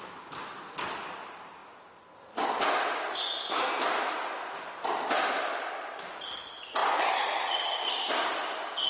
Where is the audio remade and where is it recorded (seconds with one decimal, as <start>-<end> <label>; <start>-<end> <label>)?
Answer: 0.0-8.9 recorded